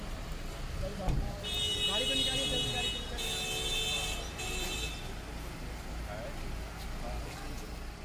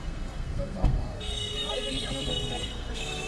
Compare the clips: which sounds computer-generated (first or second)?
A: second